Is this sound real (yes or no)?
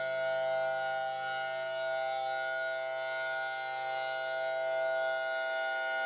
yes